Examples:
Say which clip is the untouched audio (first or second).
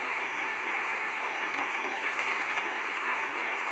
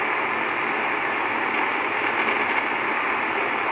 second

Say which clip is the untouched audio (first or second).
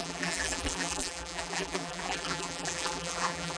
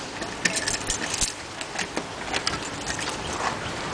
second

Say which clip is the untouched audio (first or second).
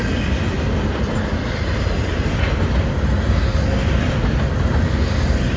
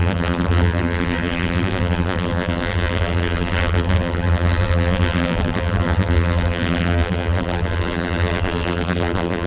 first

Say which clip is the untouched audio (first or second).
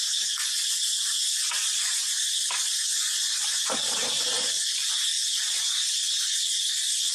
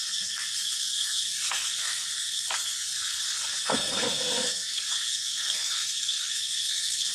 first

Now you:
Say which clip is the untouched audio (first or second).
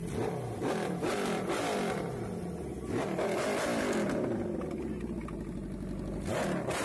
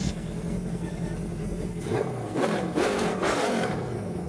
first